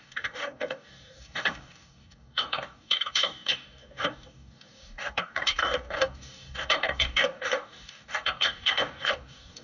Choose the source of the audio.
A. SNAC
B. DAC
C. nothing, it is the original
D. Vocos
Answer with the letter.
B